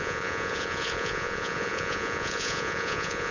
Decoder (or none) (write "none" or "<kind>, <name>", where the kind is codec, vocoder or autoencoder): vocoder, Vocos